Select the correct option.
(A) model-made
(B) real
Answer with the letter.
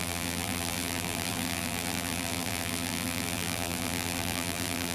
A